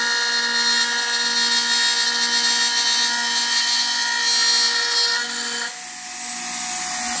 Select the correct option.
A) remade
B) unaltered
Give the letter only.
B